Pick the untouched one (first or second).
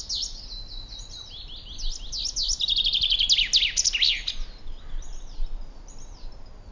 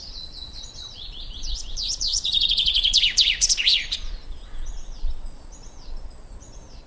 first